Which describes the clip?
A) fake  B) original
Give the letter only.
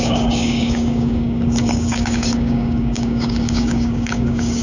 A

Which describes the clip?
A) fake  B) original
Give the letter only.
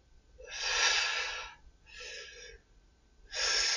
B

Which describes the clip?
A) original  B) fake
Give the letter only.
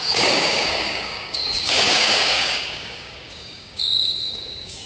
B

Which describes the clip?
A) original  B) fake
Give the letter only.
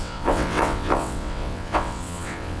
B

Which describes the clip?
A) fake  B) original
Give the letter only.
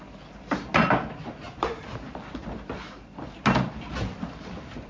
B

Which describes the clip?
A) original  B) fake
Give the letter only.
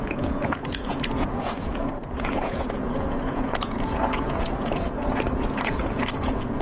B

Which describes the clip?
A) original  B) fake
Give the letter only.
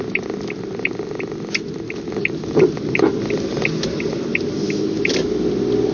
A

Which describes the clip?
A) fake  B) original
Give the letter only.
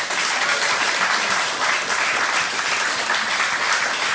B